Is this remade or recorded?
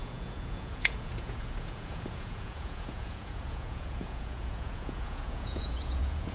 remade